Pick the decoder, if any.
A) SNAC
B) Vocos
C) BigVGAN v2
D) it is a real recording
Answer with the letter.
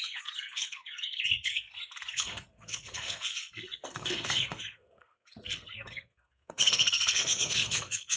A